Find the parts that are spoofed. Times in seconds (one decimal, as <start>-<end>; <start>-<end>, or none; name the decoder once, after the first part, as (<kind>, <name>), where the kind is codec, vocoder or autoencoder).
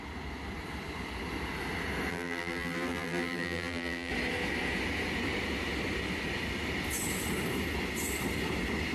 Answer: 2.1-4.1 (vocoder, BigVGAN v2)